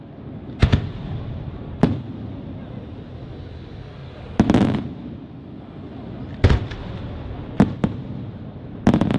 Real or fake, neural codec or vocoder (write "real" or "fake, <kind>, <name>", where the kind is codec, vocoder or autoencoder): real